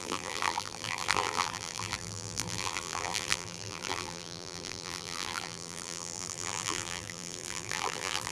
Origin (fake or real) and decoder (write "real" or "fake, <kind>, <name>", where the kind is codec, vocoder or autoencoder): fake, vocoder, BigVGAN v2